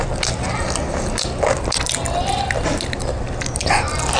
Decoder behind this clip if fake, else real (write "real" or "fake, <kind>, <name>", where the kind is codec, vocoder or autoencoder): real